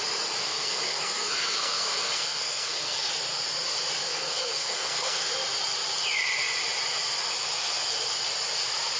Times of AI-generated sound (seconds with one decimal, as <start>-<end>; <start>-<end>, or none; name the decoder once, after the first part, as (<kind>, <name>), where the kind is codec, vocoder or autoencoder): 0.4-3.1 (codec, SNAC); 4.1-5.2